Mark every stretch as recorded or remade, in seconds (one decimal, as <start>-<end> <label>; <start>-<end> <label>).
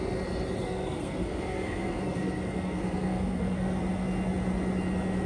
0.0-0.6 recorded; 0.6-3.8 remade; 3.8-5.3 recorded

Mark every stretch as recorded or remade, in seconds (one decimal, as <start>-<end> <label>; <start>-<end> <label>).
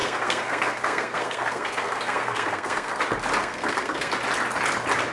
0.0-3.0 remade; 3.0-3.4 recorded; 3.4-4.1 remade; 4.1-5.1 recorded